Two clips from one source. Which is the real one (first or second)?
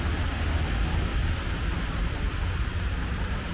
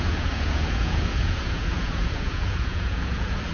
first